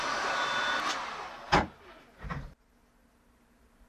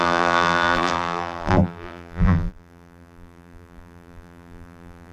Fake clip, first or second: second